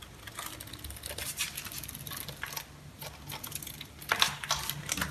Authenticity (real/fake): real